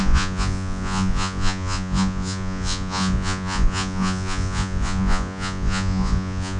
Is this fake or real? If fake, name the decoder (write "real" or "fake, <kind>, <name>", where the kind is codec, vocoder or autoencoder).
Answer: fake, vocoder, Vocos